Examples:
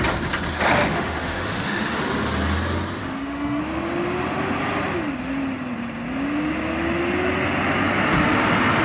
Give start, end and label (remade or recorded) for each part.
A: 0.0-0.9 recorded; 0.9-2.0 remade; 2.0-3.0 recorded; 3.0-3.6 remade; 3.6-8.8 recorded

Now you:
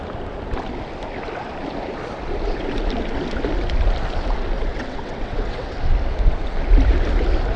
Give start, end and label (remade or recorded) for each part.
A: 0.0-4.7 recorded; 4.7-5.7 remade; 5.7-7.6 recorded